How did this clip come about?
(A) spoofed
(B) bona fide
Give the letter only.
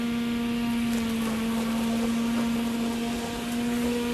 B